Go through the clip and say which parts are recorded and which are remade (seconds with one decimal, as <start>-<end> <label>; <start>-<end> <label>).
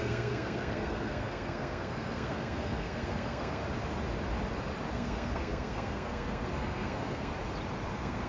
0.0-3.6 remade; 3.6-4.9 recorded; 4.9-7.3 remade; 7.3-7.9 recorded; 7.9-8.3 remade